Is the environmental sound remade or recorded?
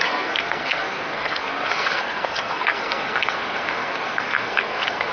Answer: remade